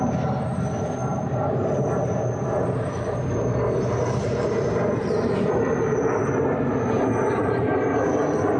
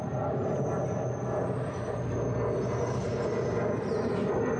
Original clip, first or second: second